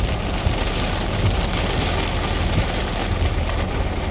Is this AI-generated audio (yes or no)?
no